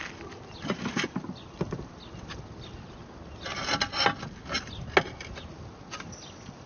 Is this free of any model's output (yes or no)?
yes